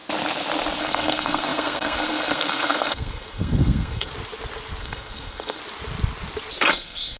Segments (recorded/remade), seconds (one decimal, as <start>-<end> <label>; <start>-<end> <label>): 0.0-0.8 recorded; 0.8-4.1 remade; 4.1-4.8 recorded; 4.8-5.6 remade; 5.6-6.7 recorded; 6.7-7.2 remade